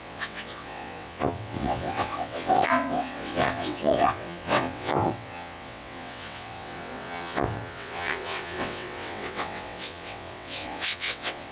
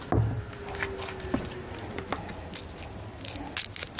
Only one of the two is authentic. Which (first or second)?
second